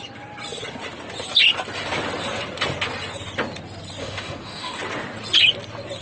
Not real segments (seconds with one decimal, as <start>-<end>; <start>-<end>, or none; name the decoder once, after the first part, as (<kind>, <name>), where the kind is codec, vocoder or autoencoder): 4.0-4.8 (autoencoder, DAC-VAE)